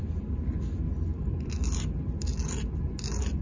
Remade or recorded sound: recorded